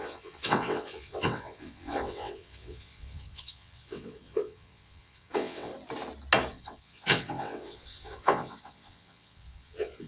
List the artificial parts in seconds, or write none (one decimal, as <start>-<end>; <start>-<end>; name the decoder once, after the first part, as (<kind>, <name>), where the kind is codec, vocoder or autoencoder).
0.0-5.7 (vocoder, WaveNeXt); 6.5-10.1